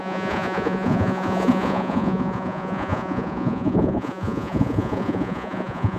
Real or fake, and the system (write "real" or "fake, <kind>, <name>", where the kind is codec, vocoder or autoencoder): fake, vocoder, Vocos